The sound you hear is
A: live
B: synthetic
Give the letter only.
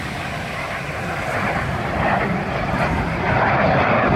B